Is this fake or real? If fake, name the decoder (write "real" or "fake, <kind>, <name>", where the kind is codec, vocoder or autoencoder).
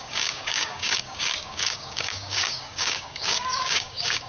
fake, codec, DAC